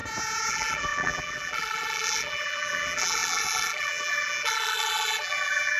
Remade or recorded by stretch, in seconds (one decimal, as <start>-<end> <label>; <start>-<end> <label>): 0.0-0.5 recorded; 0.5-5.8 remade